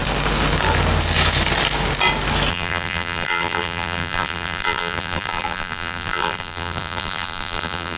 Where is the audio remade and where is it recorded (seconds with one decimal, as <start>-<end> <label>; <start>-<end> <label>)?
0.0-2.5 recorded; 2.5-8.0 remade